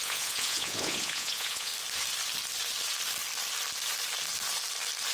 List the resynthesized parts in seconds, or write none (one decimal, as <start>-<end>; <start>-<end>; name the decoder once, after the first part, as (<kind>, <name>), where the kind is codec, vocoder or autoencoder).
0.0-1.7 (vocoder, Vocos)